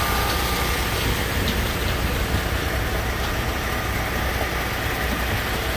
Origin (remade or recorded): recorded